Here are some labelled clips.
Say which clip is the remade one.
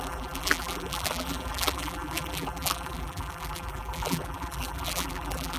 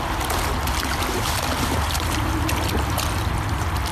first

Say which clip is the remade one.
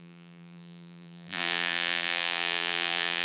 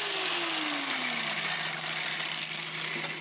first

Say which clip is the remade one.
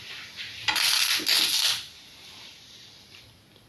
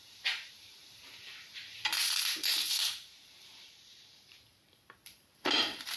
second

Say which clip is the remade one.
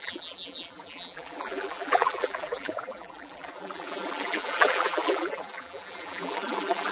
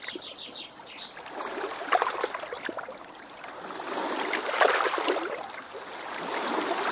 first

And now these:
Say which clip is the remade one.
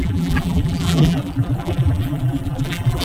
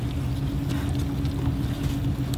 first